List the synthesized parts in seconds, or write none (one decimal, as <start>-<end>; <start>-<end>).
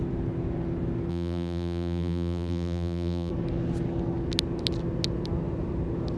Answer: 1.1-3.3